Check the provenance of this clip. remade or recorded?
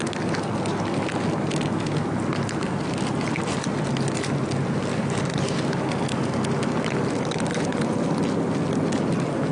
recorded